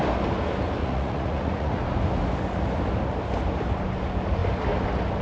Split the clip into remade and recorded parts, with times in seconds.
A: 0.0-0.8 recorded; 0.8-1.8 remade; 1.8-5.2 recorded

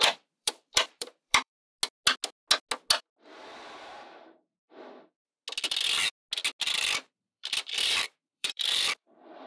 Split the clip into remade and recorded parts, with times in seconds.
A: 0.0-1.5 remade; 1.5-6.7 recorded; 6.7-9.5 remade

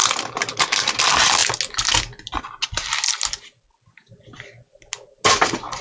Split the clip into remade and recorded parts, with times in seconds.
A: 0.0-5.8 recorded

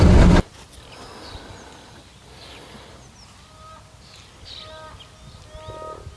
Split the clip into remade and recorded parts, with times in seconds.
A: 0.0-6.2 recorded

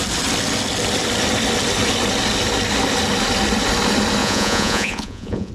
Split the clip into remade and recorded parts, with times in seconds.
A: 0.0-4.2 recorded; 4.2-5.5 remade